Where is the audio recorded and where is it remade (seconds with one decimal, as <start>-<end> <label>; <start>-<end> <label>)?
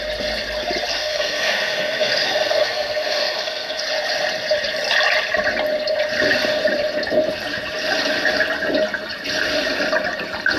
0.0-0.9 recorded; 0.9-3.8 remade; 3.8-10.6 recorded